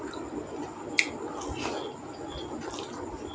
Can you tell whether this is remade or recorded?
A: recorded